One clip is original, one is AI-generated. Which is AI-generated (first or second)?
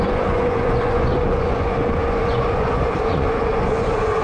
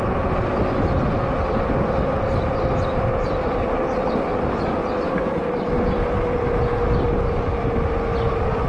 first